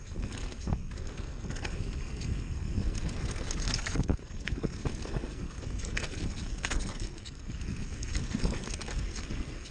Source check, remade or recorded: remade